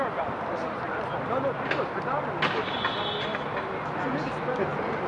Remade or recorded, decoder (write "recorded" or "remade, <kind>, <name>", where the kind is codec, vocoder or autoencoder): recorded